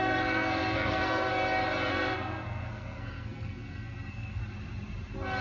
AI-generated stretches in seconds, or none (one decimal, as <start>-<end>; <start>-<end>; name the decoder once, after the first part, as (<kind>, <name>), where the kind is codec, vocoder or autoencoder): 0.0-1.3 (codec, SNAC); 1.9-4.4